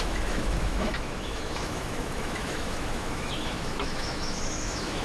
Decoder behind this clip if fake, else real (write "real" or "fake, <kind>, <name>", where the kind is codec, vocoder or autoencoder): fake, autoencoder, DAC-VAE